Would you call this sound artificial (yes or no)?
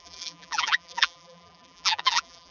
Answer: yes